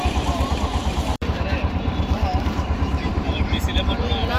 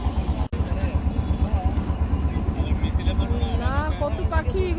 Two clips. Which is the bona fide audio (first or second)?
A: second